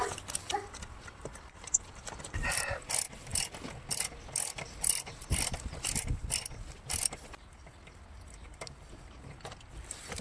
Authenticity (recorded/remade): recorded